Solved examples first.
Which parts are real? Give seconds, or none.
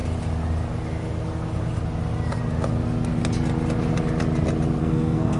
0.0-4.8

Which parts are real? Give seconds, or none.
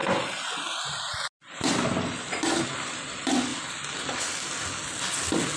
0.0-5.6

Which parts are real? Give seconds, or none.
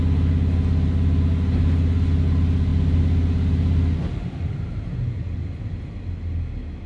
0.0-6.9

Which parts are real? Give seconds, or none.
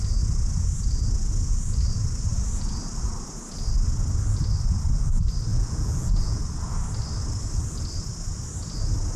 0.0-5.5; 6.4-9.2